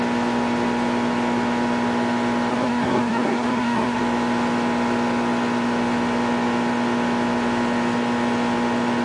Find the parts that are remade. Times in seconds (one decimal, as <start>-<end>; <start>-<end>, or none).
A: 2.5-4.0